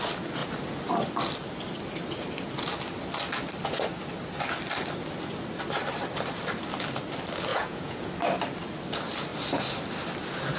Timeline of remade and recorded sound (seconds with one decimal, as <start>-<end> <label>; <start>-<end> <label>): 0.0-7.5 recorded; 7.5-8.1 remade; 8.1-10.6 recorded